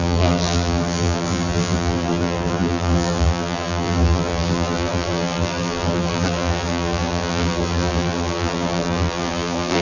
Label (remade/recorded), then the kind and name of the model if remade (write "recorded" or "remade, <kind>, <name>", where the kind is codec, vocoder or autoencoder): remade, vocoder, BigVGAN v2